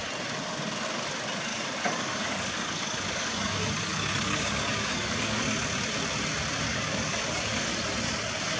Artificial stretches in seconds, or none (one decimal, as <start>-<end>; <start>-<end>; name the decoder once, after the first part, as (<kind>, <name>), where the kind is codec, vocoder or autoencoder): 1.5-5.4 (codec, DAC); 6.7-7.7